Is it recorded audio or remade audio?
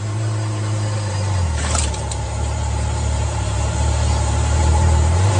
remade